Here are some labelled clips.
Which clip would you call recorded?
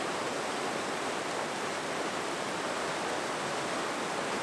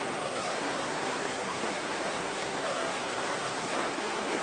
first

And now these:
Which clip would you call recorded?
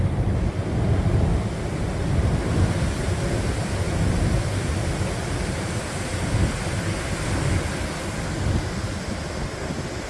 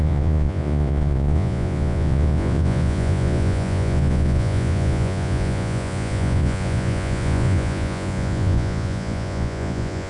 first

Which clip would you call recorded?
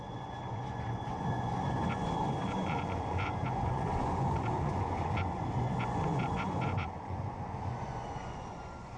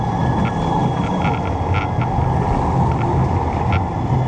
second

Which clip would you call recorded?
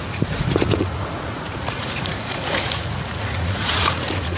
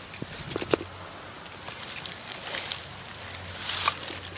second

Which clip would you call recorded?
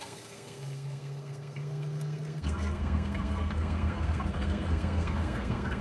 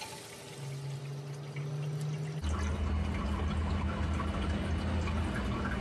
second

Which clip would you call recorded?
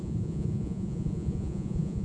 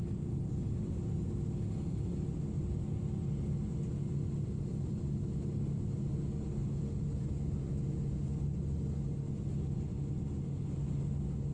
second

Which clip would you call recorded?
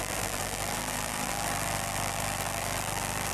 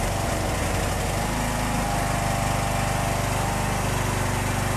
second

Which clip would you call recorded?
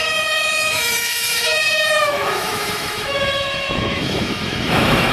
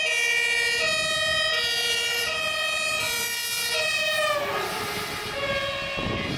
second